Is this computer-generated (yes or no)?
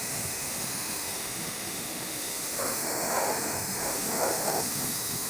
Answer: yes